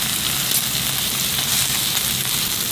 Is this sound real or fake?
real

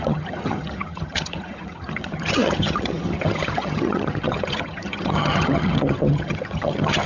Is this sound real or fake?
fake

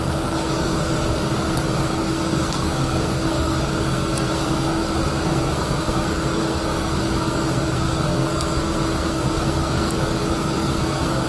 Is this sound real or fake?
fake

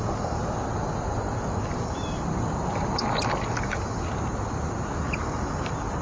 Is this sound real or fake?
real